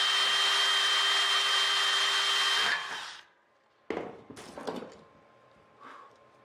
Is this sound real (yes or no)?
yes